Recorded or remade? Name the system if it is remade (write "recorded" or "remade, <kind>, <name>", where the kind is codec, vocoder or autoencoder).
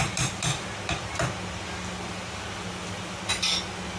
recorded